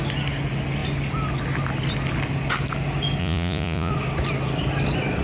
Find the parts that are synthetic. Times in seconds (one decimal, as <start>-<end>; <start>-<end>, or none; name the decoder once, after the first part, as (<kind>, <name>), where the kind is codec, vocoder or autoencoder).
3.2-3.9 (vocoder, Vocos)

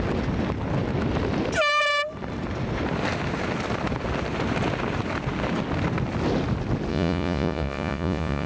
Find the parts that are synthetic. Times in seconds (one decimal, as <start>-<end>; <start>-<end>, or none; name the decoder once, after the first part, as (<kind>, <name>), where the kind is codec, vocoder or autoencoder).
6.9-8.5 (vocoder, Vocos)

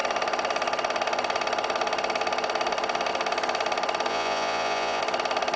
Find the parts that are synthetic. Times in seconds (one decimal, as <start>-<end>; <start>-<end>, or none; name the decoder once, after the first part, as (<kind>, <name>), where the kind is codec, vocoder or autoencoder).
4.1-5.0 (vocoder, Vocos)

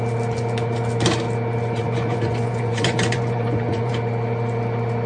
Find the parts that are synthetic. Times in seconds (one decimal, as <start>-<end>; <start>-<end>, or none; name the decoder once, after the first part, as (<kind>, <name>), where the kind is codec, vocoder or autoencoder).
1.8-3.9 (vocoder, Vocos)

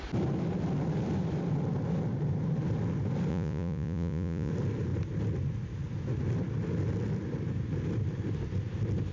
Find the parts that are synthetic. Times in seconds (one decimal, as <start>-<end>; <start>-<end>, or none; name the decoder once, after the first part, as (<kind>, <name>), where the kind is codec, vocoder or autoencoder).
3.3-4.5 (vocoder, Vocos)